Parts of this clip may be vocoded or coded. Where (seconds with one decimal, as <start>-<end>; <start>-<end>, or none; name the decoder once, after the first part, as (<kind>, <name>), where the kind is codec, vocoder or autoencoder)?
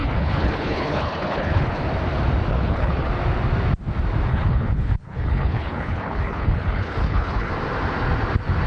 0.0-1.8 (codec, HILCodec); 2.5-3.1; 4.3-7.5